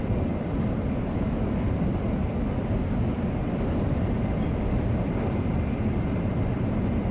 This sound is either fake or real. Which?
fake